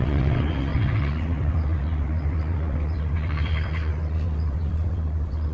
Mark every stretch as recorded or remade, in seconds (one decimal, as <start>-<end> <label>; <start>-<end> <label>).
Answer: 0.0-5.5 remade